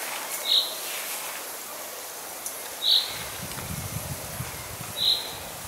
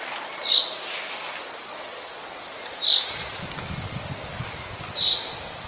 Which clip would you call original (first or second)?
first